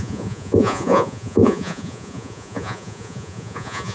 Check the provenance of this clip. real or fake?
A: fake